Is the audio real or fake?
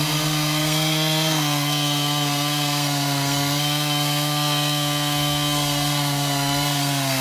fake